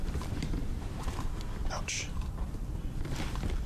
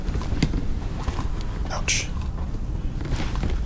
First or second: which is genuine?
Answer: second